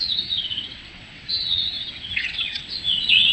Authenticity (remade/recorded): remade